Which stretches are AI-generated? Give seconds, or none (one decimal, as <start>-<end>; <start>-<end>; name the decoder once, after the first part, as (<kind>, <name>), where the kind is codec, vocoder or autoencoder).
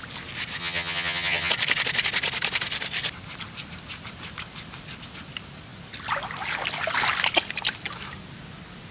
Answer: 0.6-1.5 (vocoder, HiFi-GAN)